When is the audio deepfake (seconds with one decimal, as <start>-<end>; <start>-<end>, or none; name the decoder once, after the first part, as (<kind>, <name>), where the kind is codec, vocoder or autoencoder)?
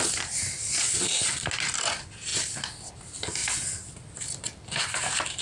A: none